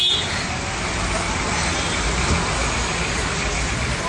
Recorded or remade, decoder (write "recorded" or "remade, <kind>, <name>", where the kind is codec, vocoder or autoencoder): recorded